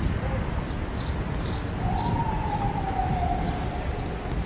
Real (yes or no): yes